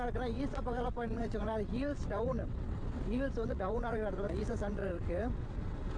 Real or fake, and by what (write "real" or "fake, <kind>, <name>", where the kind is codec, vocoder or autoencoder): fake, vocoder, WaveNeXt